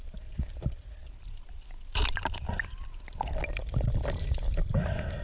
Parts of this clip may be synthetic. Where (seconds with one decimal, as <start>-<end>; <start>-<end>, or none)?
1.0-1.6